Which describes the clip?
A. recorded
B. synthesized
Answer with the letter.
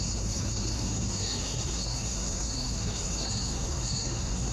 B